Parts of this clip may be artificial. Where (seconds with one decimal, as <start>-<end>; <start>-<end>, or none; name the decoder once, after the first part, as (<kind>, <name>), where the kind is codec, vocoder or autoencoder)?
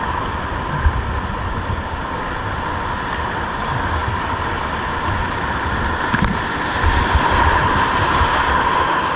none